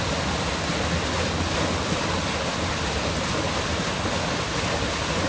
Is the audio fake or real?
real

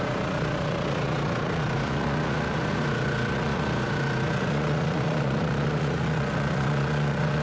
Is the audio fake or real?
fake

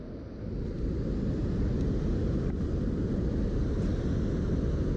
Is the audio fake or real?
real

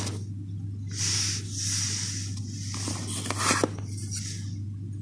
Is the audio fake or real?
real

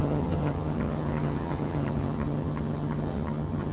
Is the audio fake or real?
fake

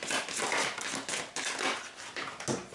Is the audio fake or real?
real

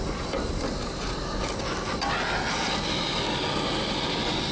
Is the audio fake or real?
real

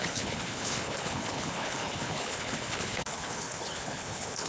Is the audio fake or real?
fake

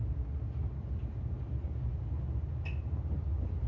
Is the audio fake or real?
real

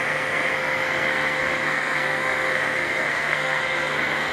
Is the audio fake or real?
fake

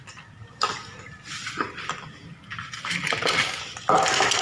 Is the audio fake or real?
real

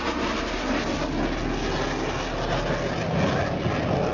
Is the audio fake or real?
real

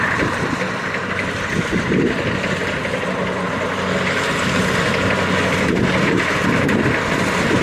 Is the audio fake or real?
real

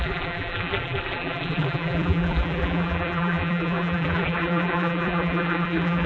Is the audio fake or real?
fake